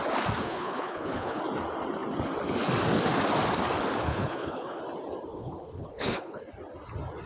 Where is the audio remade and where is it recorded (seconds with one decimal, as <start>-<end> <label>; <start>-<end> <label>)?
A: 0.0-0.4 recorded; 0.4-1.4 remade; 1.4-4.1 recorded; 4.1-4.8 remade; 4.8-5.3 recorded; 5.3-6.4 remade; 6.4-7.3 recorded